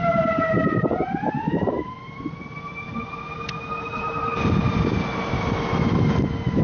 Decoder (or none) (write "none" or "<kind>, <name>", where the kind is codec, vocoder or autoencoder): none